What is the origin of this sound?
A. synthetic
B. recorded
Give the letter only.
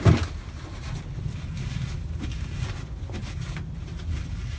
B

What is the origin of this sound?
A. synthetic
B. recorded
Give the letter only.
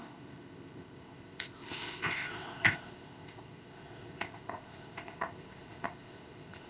A